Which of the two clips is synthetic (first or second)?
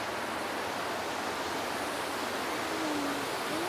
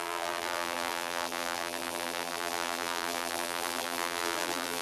second